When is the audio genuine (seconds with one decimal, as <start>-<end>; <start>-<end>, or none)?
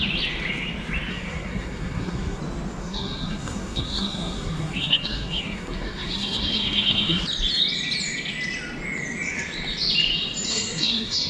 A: 0.0-1.1; 2.4-2.8; 7.2-10.5